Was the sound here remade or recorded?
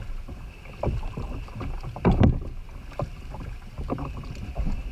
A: recorded